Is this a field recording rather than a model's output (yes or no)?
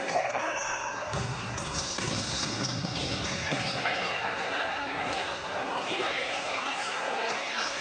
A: no